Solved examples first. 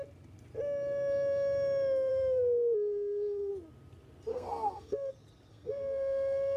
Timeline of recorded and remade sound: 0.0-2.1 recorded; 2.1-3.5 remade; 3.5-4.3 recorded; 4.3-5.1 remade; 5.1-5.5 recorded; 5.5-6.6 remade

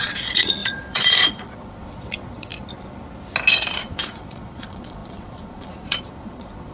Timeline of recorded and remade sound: 0.0-2.5 remade; 2.5-3.5 recorded; 3.5-6.7 remade

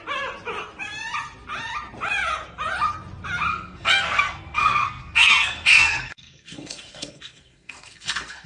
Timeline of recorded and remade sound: 0.0-3.5 recorded; 3.5-8.5 remade

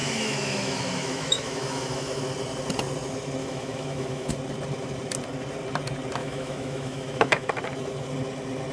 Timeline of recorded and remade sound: 0.0-2.2 remade; 2.2-3.4 recorded; 3.4-4.3 remade; 4.3-6.2 recorded; 6.2-7.5 remade; 7.5-8.7 recorded

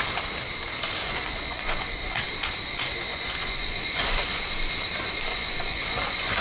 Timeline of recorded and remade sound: 0.0-1.0 recorded; 1.0-2.2 remade; 2.2-3.1 recorded; 3.1-4.5 remade; 4.5-5.3 recorded; 5.3-6.4 remade

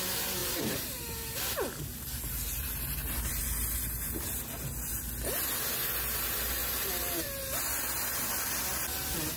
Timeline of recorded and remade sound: 0.0-0.4 recorded; 0.4-1.4 remade; 1.4-3.0 recorded; 3.0-4.4 remade; 4.4-6.6 recorded; 6.6-7.4 remade; 7.4-9.4 recorded

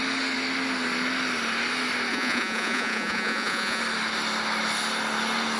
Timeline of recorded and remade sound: 0.0-2.1 recorded; 2.1-3.8 remade; 3.8-5.6 recorded